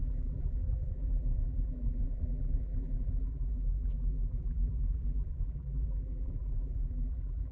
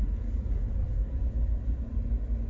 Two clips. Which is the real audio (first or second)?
second